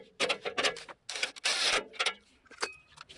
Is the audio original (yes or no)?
yes